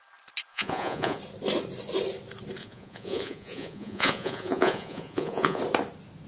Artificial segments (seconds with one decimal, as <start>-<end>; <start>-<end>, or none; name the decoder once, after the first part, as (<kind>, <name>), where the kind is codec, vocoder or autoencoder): 0.5-1.2 (vocoder, Vocos); 2.6-5.6